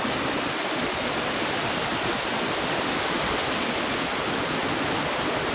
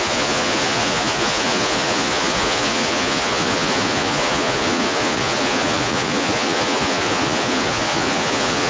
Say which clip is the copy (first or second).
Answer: second